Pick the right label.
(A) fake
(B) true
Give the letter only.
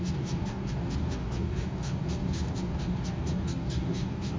A